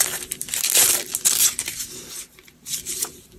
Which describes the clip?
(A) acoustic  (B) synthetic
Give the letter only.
B